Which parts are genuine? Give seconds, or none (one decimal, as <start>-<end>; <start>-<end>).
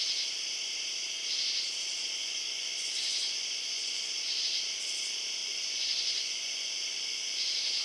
0.0-2.2; 4.4-5.4; 7.3-7.8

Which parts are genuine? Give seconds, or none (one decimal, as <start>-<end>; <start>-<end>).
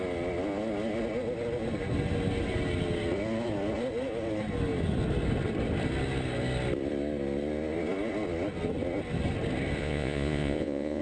0.0-9.8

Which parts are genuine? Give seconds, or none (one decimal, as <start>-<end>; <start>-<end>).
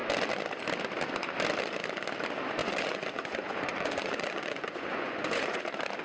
0.0-2.6; 5.6-6.0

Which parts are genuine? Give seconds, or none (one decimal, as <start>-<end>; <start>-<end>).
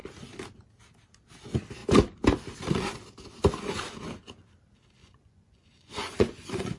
0.0-5.0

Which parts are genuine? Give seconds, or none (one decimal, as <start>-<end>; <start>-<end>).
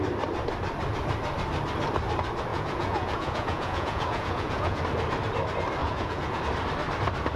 0.0-2.5; 4.8-5.8; 6.4-7.4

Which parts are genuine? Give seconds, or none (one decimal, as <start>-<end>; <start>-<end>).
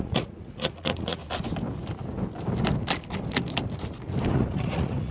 1.2-4.3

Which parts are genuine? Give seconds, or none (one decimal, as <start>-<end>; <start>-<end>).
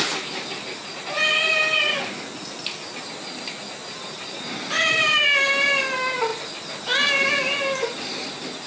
0.0-8.7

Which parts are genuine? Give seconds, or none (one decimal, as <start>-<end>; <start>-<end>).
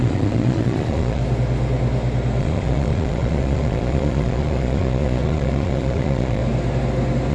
1.2-2.4; 6.4-7.3